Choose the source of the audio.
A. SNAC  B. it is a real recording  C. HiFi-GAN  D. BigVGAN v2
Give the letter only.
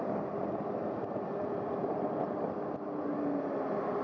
B